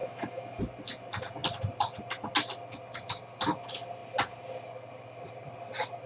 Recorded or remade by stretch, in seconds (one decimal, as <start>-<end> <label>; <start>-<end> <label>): 0.0-0.6 remade; 0.6-6.1 recorded